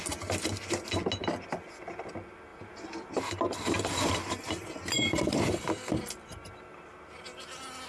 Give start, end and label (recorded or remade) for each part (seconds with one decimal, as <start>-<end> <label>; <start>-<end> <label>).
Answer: 0.0-2.5 recorded; 2.5-6.9 remade; 6.9-7.9 recorded